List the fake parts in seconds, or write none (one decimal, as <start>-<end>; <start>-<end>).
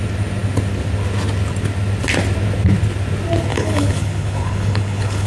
3.5-5.3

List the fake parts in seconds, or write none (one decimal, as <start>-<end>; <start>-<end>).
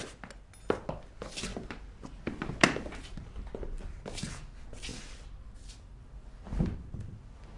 none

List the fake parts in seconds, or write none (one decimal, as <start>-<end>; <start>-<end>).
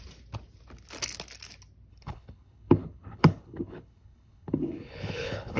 1.9-5.6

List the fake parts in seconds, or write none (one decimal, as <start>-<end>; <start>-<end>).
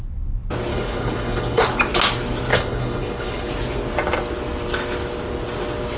0.7-1.6; 2.5-3.5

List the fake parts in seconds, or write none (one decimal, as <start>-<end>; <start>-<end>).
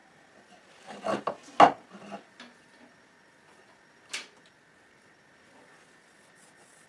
none